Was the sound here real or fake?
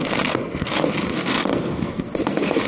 fake